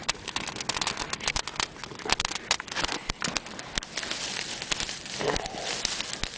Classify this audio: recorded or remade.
recorded